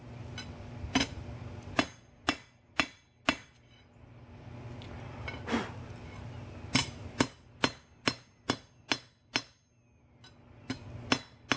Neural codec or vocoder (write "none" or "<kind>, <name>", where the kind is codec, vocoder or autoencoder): none